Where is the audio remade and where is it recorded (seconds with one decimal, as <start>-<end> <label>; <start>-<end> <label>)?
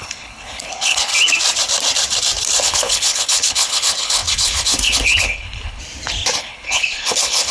0.0-1.1 remade; 1.1-2.6 recorded; 2.6-5.8 remade; 5.8-6.4 recorded; 6.4-7.5 remade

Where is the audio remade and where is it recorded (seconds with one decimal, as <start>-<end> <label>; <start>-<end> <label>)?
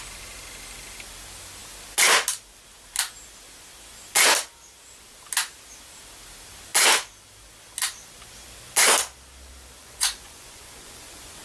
0.0-9.8 recorded; 9.8-11.4 remade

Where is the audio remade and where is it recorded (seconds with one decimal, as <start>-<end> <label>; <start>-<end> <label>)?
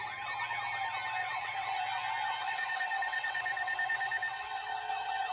0.0-1.2 recorded; 1.2-1.8 remade; 1.8-2.4 recorded; 2.4-5.3 remade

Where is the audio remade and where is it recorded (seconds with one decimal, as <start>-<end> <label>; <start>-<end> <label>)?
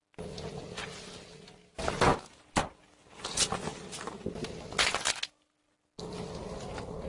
0.0-7.1 recorded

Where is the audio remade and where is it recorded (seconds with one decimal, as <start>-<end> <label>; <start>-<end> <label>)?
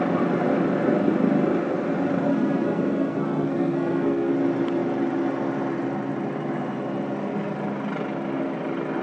0.0-2.3 recorded; 2.3-4.3 remade; 4.3-9.0 recorded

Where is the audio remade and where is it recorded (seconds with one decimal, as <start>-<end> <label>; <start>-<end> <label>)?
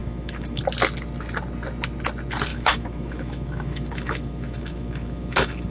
0.0-0.6 remade; 0.6-2.5 recorded; 2.5-5.7 remade